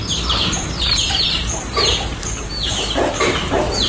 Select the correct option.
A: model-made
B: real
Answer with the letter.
A